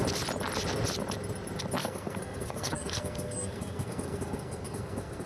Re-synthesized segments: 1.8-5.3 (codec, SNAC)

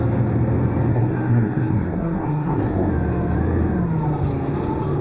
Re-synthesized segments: 0.9-2.9 (codec, SNAC)

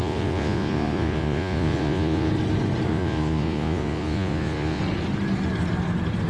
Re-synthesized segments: 0.0-2.3 (vocoder, Vocos); 2.9-4.8

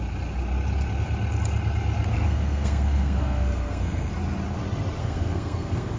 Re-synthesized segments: 2.1-4.1 (codec, SNAC); 5.0-6.0

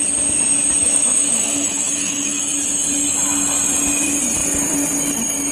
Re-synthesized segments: 0.8-2.4 (autoencoder, DAC-VAE)

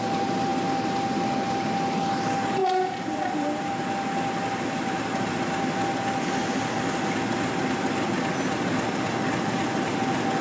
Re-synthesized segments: 2.6-3.7 (vocoder, BigVGAN v2)

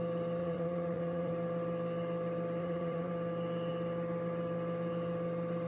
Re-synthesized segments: 0.4-1.3 (vocoder, Vocos); 2.6-3.1